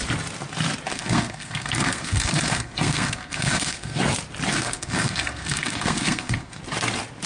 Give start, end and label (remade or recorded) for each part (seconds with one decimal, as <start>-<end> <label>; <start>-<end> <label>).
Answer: 0.0-0.9 recorded; 0.9-4.0 remade; 4.0-4.5 recorded; 4.5-6.6 remade; 6.6-7.3 recorded